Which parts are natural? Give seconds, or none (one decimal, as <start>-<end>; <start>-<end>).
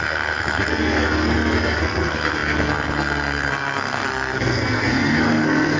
none